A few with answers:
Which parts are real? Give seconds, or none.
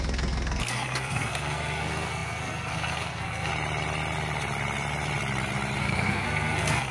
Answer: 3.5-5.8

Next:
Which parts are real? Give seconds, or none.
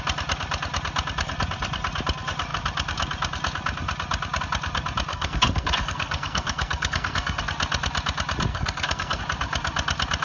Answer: 0.0-5.1; 7.4-8.5; 9.2-10.2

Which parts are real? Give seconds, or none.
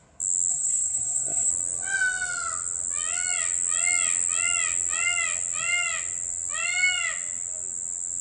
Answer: 0.0-0.5; 1.5-8.2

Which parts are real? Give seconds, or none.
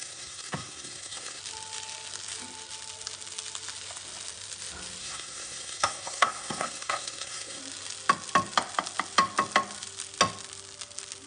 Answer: 1.4-5.0; 7.6-11.3